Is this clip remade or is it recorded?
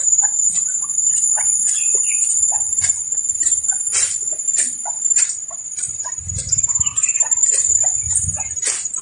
recorded